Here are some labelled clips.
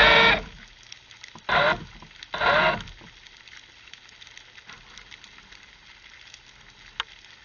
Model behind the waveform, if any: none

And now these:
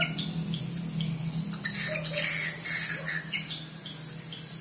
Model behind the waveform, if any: none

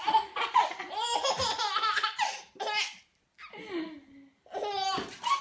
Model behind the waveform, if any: none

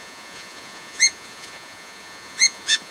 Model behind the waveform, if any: vocoder, Vocos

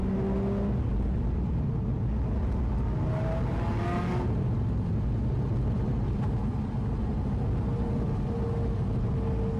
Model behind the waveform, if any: none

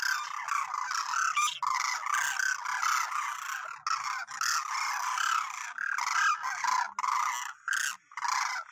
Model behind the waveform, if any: none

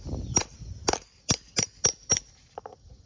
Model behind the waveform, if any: none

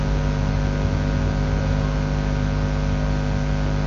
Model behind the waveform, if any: none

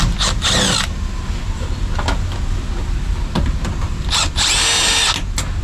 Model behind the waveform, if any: none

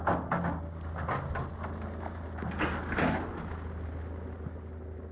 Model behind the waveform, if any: none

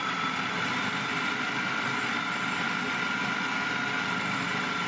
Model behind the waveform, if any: none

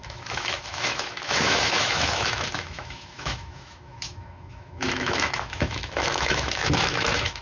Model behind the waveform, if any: autoencoder, DAC-VAE